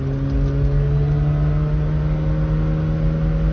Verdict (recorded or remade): recorded